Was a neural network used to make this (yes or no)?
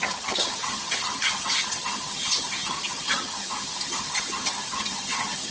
yes